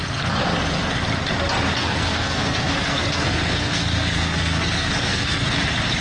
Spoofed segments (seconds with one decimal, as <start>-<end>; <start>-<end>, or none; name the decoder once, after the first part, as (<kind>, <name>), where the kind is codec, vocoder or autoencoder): 1.8-5.4 (codec, SNAC)